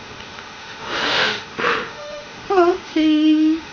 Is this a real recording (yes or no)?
no